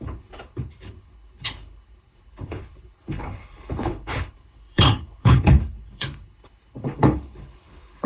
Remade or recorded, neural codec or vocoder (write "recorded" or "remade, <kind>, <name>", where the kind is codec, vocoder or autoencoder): remade, codec, HILCodec